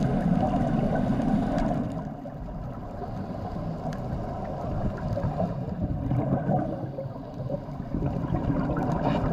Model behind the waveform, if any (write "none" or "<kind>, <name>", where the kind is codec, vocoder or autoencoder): none